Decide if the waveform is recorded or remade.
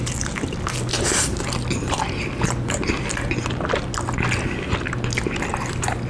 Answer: recorded